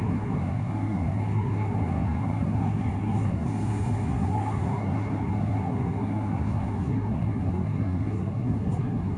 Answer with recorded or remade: remade